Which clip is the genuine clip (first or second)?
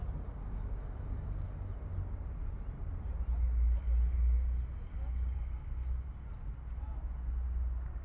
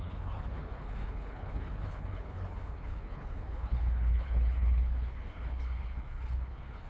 first